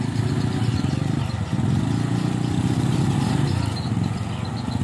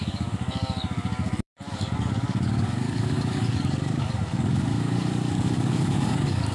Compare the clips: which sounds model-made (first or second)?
second